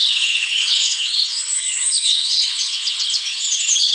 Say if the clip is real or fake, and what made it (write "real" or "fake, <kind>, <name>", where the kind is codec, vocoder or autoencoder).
fake, codec, HILCodec